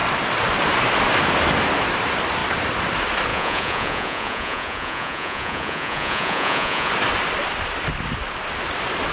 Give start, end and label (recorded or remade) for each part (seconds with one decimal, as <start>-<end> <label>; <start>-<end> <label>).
0.0-3.3 recorded; 3.3-6.9 remade; 6.9-9.1 recorded